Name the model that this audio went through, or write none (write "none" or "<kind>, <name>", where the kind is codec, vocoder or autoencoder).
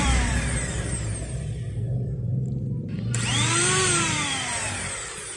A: vocoder, BigVGAN v2